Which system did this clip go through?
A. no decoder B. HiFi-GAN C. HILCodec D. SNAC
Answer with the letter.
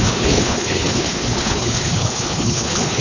C